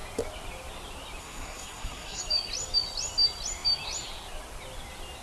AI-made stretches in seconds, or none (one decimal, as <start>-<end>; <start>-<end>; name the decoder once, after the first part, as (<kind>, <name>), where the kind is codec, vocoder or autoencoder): 1.2-2.2 (codec, SNAC)